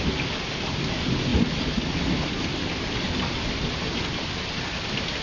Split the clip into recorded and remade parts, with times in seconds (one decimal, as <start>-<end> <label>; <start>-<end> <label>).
0.0-1.3 recorded; 1.3-4.3 remade; 4.3-5.2 recorded